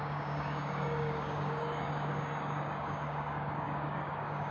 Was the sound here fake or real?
fake